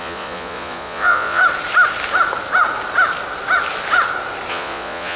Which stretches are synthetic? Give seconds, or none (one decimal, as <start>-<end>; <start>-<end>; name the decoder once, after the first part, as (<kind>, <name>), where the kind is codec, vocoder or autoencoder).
0.0-1.4 (vocoder, Vocos); 4.5-5.2